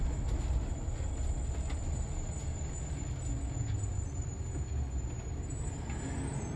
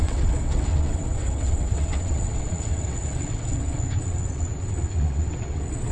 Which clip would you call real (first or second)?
first